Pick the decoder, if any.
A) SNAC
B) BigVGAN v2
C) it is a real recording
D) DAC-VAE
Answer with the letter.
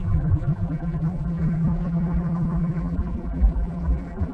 B